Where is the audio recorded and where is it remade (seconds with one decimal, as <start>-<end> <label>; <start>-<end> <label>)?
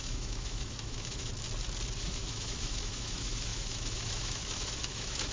0.0-1.3 remade; 1.3-2.0 recorded; 2.0-5.3 remade